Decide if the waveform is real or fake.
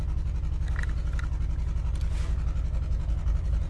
real